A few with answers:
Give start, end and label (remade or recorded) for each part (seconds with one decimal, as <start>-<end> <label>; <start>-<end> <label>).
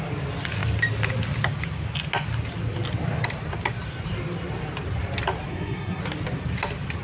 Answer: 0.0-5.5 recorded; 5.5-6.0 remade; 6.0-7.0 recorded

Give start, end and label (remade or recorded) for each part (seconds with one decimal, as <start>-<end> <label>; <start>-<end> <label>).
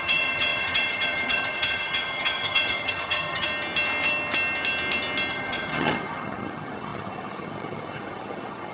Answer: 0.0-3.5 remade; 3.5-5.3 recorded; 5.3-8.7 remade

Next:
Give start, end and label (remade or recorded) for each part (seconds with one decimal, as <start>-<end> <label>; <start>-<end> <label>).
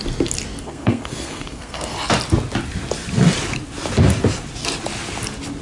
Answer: 0.0-0.6 recorded; 0.6-1.9 remade; 1.9-5.6 recorded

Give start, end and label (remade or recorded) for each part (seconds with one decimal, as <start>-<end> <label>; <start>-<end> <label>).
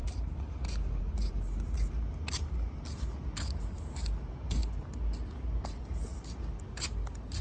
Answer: 0.0-1.0 remade; 1.0-7.4 recorded